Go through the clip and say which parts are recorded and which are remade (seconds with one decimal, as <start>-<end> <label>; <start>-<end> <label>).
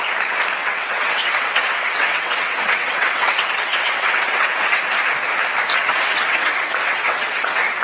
0.0-0.6 recorded; 0.6-4.8 remade; 4.8-5.8 recorded; 5.8-7.8 remade